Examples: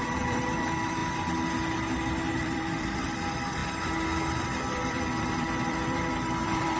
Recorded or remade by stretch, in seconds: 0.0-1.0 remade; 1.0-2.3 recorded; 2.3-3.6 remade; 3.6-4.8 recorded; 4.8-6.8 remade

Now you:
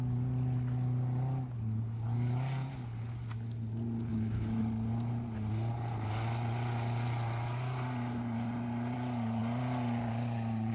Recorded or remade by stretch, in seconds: 0.0-4.1 recorded; 4.1-4.6 remade; 4.6-10.7 recorded

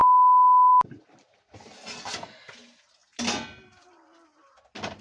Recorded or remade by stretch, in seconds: 0.0-5.0 recorded

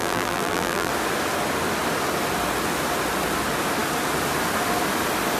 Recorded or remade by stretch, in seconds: 0.0-0.9 remade; 0.9-5.4 recorded

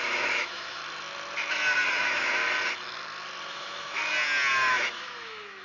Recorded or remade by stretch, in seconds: 0.0-0.8 remade; 0.8-1.9 recorded; 1.9-2.4 remade; 2.4-3.5 recorded; 3.5-4.0 remade; 4.0-4.7 recorded; 4.7-5.6 remade

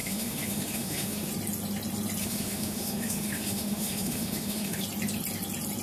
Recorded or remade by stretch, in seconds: 0.0-1.3 remade; 1.3-2.2 recorded; 2.2-4.8 remade; 4.8-5.8 recorded

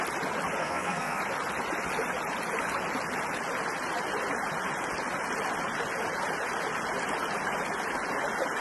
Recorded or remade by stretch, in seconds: 0.0-0.6 recorded; 0.6-1.2 remade; 1.2-8.6 recorded

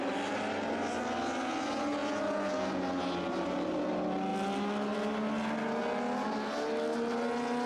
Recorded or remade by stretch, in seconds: 0.0-7.7 recorded